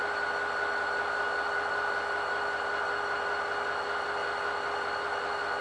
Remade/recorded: recorded